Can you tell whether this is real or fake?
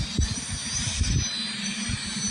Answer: real